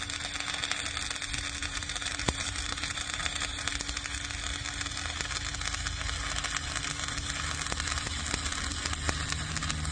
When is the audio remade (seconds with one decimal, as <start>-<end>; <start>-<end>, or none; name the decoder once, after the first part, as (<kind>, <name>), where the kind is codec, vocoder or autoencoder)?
1.6-3.7 (vocoder, BigVGAN v2)